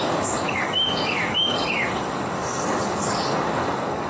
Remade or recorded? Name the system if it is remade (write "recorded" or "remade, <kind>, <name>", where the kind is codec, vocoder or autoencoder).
remade, codec, DAC